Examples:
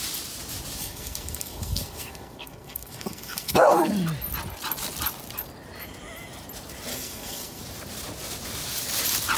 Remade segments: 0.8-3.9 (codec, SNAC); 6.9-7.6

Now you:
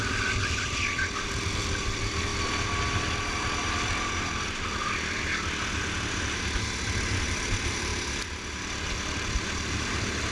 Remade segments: 0.0-2.3 (vocoder, BigVGAN v2); 7.3-7.9; 8.6-10.3

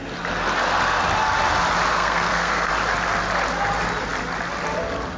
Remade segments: 1.9-2.7 (codec, SNAC)

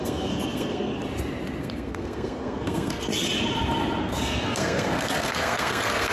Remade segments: 0.0-0.9 (codec, SNAC); 1.6-3.1; 4.0-6.1